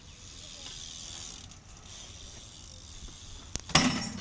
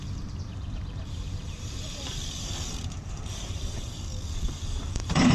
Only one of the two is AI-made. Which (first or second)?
second